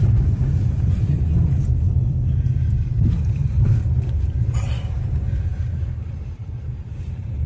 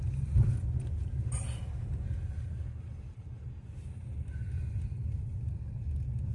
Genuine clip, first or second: second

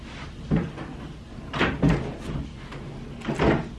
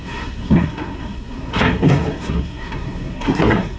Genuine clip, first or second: first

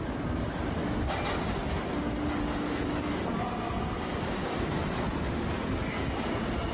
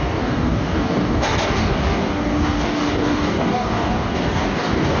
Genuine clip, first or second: first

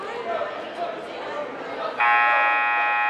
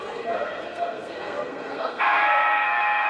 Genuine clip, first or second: first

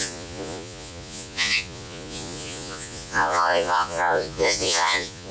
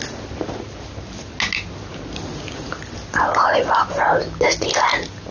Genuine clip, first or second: second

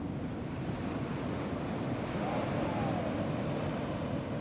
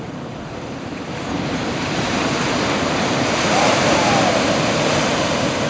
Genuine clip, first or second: first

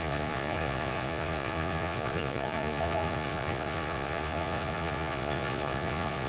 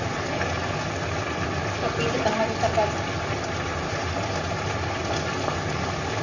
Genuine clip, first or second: second